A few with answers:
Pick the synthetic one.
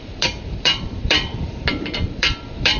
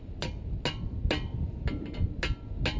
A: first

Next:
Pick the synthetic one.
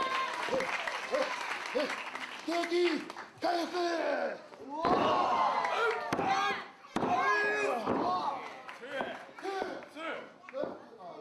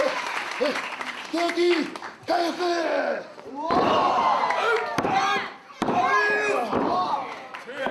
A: second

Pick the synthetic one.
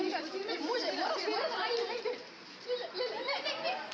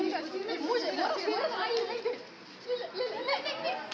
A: first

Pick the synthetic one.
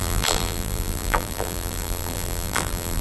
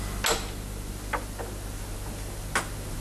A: first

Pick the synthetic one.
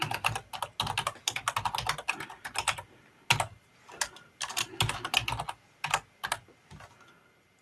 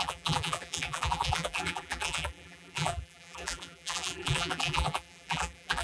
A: second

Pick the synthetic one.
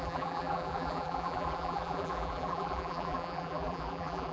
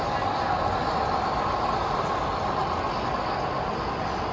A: first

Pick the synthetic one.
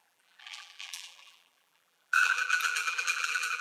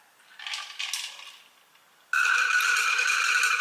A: first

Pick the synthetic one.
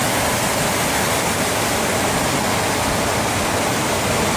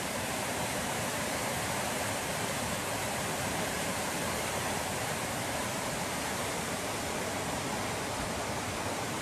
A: second